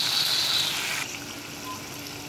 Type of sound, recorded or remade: recorded